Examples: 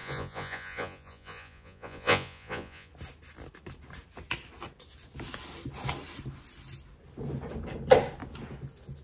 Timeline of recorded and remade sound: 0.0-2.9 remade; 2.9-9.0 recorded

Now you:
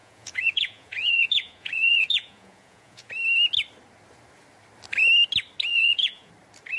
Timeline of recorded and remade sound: 0.0-3.1 remade; 3.1-5.7 recorded; 5.7-6.3 remade; 6.3-6.8 recorded

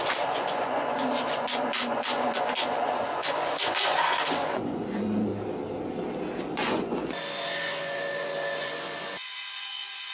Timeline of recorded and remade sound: 0.0-5.3 remade; 5.3-6.4 recorded; 6.4-10.1 remade

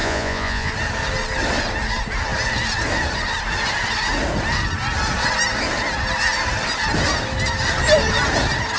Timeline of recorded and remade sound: 0.0-0.7 remade; 0.7-8.8 recorded

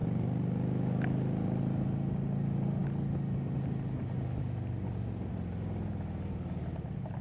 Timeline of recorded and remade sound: 0.0-7.2 recorded